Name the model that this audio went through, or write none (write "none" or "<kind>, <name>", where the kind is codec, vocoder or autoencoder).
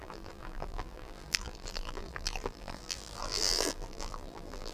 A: vocoder, BigVGAN v2